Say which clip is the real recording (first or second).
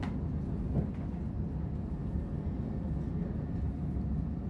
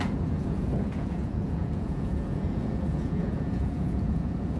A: first